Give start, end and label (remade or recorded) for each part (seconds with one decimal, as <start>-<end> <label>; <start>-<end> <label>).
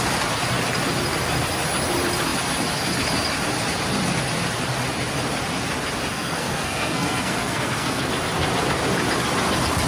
0.0-6.1 recorded; 6.1-8.1 remade; 8.1-9.9 recorded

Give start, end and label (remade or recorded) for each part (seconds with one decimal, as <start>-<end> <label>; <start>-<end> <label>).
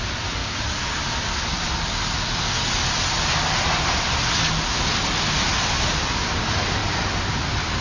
0.0-7.8 recorded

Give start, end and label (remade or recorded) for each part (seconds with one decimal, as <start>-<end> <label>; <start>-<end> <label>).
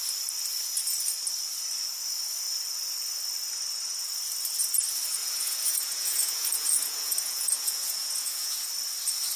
0.0-5.2 recorded; 5.2-8.7 remade; 8.7-9.4 recorded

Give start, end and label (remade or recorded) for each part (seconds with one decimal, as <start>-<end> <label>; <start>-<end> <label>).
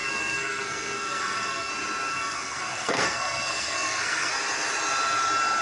0.0-1.7 remade; 1.7-2.1 recorded; 2.1-4.3 remade; 4.3-5.6 recorded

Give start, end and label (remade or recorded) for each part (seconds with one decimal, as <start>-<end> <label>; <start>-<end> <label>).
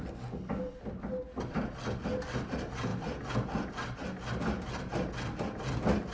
0.0-6.1 recorded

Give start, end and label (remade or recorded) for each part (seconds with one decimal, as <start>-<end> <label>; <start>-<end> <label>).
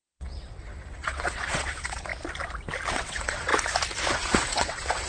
0.0-2.1 remade; 2.1-2.9 recorded; 2.9-3.5 remade; 3.5-4.1 recorded; 4.1-5.1 remade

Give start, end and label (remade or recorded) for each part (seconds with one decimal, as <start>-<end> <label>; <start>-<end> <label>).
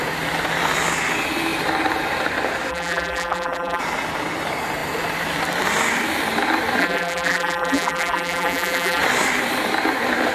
0.0-2.7 recorded; 2.7-3.8 remade; 3.8-6.8 recorded; 6.8-9.0 remade; 9.0-10.3 recorded